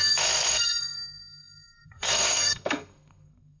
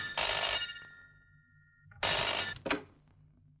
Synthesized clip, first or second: first